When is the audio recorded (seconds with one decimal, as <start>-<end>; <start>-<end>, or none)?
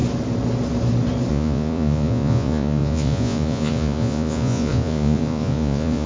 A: 0.0-1.3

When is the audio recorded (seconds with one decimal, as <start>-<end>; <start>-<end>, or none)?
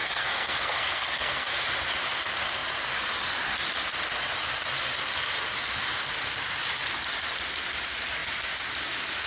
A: 1.5-9.3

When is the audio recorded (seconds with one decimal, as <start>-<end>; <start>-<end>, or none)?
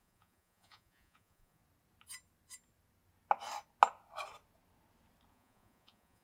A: 1.6-5.3